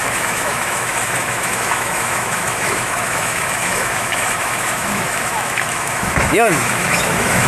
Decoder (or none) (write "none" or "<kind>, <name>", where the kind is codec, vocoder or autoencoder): autoencoder, DAC-VAE